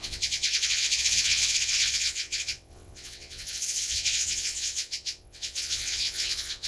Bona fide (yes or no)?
no